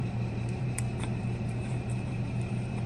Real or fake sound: fake